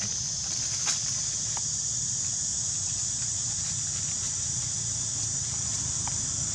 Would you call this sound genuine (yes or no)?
yes